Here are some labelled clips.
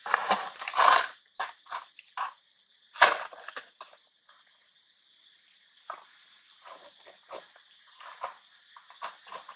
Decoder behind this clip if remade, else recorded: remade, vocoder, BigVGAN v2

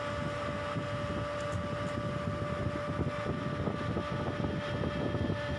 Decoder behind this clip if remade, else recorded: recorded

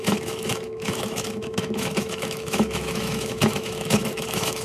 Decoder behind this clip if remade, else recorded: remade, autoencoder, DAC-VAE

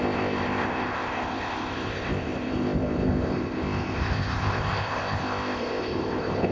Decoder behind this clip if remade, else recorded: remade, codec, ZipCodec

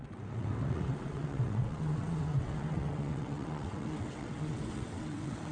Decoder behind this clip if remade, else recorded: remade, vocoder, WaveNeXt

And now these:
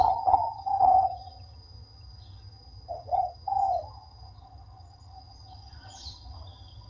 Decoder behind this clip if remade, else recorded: remade, vocoder, HiFi-GAN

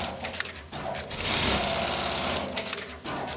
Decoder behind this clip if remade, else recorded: recorded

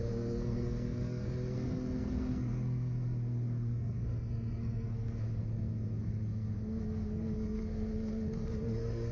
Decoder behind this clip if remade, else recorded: remade, codec, SNAC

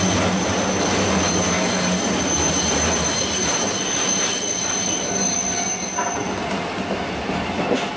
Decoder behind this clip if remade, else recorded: recorded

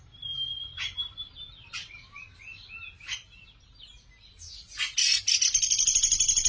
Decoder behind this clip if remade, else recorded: recorded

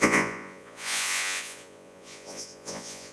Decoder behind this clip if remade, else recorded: remade, vocoder, Vocos